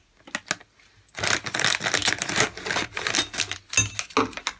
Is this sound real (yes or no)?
yes